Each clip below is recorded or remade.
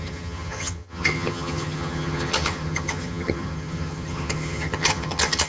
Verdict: remade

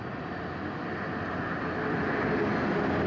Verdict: recorded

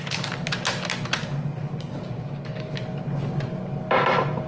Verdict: recorded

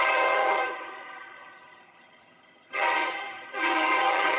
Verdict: remade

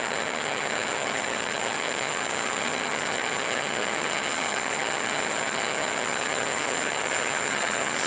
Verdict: remade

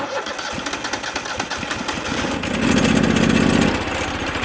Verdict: recorded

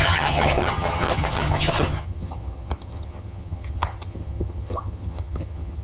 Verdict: remade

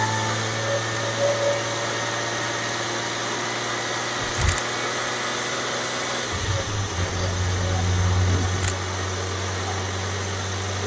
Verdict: recorded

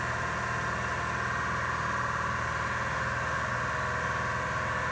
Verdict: recorded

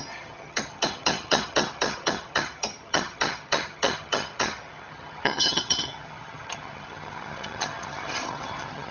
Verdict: remade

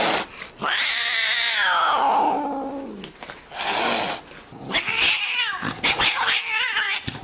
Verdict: recorded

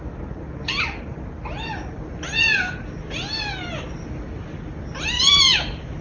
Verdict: recorded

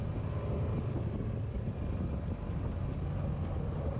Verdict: recorded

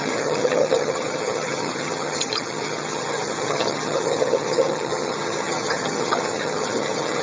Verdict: remade